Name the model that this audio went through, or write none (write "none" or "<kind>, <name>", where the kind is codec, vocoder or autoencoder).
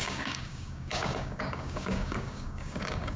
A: codec, DAC